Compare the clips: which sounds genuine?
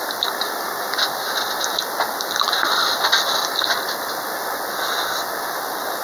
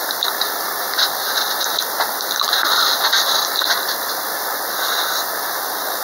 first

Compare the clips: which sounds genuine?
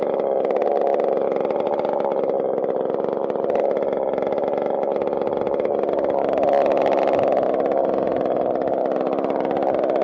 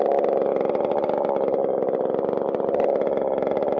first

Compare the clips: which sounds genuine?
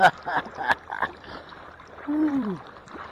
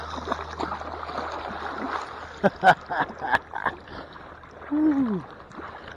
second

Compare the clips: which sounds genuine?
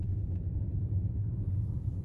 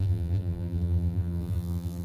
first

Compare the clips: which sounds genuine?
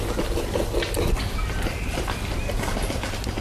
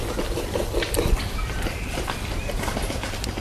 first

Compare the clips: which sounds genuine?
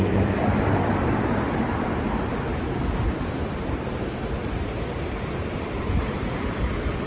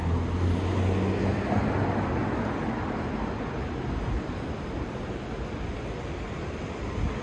second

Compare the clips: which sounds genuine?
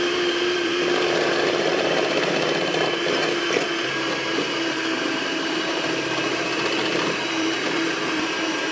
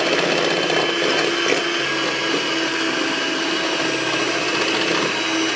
second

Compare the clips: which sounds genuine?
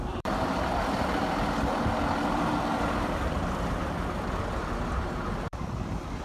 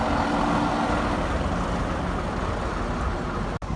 second